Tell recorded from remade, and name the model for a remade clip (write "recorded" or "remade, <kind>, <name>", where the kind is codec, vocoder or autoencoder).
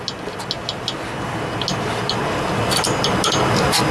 recorded